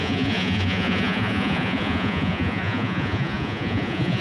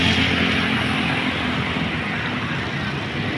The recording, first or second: second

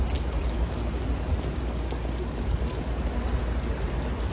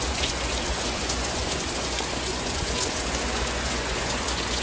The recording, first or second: first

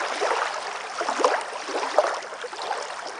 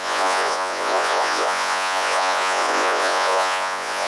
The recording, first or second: first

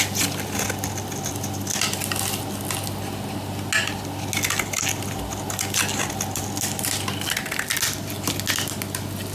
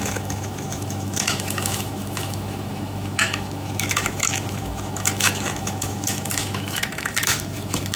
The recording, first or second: first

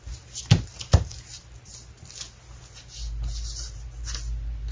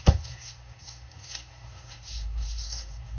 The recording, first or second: first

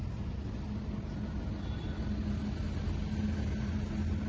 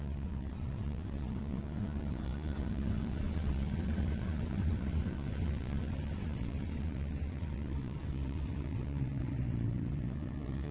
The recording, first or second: first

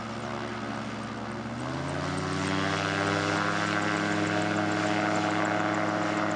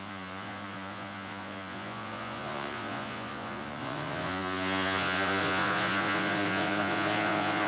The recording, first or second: first